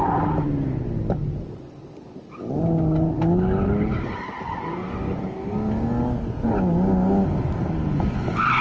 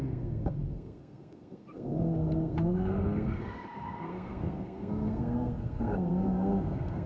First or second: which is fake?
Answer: second